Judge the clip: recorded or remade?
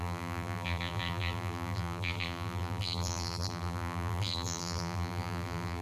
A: remade